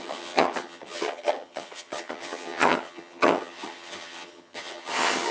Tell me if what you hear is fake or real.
fake